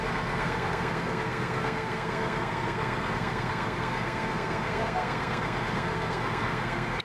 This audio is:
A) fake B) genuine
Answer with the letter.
A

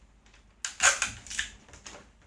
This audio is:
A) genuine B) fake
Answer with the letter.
A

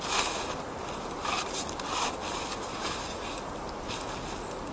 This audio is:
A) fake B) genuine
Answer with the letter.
B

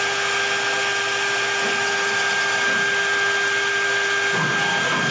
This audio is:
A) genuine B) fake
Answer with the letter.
A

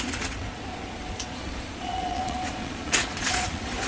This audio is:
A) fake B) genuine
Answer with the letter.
A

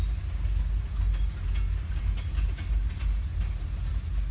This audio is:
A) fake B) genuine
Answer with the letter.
B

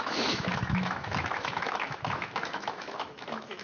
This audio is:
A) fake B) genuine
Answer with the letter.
A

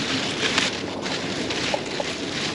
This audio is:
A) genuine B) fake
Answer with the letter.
B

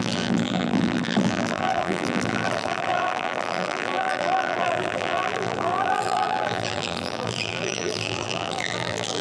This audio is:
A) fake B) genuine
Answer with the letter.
A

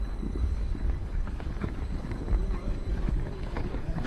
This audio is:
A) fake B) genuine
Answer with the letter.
A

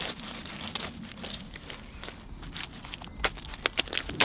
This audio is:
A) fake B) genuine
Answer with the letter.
B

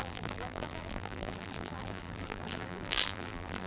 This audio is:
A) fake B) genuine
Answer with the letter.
A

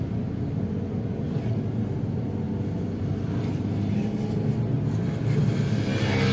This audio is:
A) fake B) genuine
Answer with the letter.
B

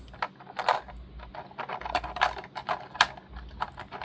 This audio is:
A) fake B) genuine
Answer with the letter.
B